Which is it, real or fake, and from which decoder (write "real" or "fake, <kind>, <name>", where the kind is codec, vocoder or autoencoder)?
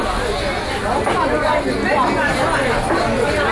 real